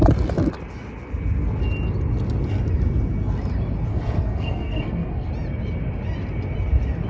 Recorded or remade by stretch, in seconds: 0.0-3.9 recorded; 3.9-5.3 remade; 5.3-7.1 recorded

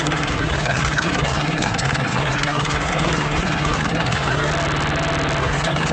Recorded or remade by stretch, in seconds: 0.0-4.5 remade; 4.5-5.4 recorded; 5.4-5.9 remade